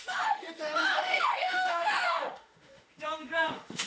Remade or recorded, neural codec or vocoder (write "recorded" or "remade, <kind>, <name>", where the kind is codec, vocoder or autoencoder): remade, autoencoder, DAC-VAE